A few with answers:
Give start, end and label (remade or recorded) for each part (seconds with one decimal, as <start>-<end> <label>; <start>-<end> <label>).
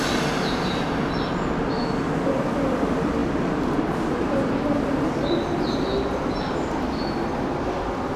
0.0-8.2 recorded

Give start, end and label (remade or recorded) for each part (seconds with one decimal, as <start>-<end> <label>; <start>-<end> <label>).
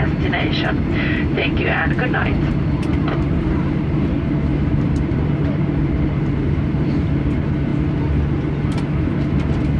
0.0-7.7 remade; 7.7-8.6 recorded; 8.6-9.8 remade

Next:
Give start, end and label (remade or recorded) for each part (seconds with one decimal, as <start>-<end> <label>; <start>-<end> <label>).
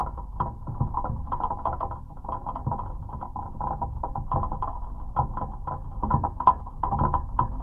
0.0-1.8 remade; 1.8-6.1 recorded; 6.1-7.6 remade